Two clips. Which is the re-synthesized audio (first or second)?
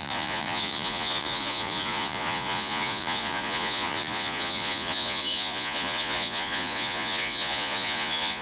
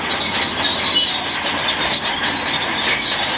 first